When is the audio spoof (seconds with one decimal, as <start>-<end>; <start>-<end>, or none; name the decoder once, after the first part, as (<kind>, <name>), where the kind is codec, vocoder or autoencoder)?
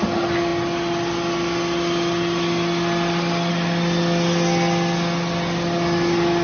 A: none